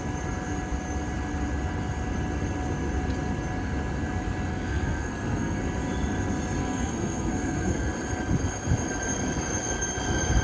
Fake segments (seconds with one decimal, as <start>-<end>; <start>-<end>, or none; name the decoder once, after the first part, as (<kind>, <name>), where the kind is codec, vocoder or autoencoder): 4.5-5.6 (codec, SNAC); 6.6-7.9